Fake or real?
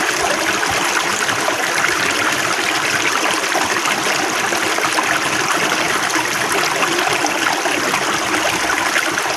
real